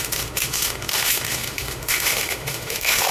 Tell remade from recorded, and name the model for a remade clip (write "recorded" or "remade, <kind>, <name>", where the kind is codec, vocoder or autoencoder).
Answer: remade, autoencoder, DAC-VAE